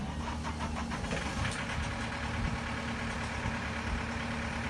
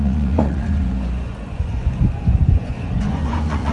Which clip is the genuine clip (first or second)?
first